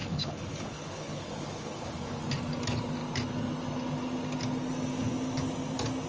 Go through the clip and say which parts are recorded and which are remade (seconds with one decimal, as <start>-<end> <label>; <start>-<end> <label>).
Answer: 0.0-2.2 remade; 2.2-6.1 recorded